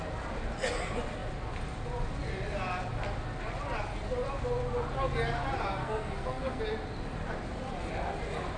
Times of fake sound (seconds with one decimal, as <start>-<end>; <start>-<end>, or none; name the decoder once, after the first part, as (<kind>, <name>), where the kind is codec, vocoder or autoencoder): 5.8-6.6 (codec, SNAC)